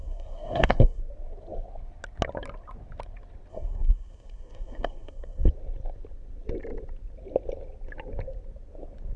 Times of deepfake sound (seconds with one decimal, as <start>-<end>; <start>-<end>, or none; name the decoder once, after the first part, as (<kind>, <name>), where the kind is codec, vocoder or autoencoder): 0.0-1.0 (codec, SNAC); 3.5-5.5